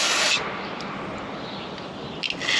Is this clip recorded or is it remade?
recorded